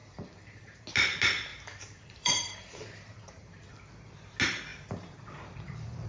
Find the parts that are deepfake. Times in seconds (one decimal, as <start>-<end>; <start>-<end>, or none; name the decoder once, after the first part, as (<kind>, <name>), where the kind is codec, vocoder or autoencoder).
0.0-0.8 (vocoder, BigVGAN v2); 1.5-3.7; 4.7-6.1